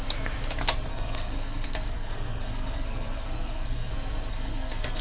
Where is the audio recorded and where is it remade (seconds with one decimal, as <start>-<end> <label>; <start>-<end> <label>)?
0.0-0.9 recorded; 0.9-3.9 remade; 3.9-4.3 recorded; 4.3-5.0 remade